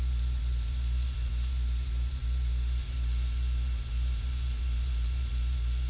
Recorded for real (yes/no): no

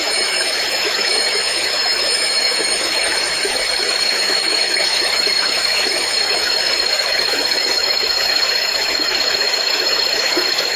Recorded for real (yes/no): no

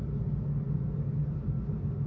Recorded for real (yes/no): yes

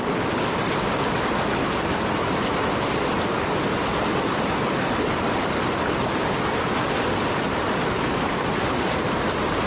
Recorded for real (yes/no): yes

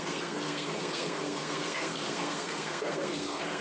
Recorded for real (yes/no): no